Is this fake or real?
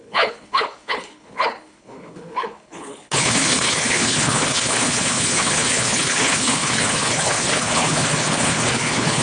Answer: fake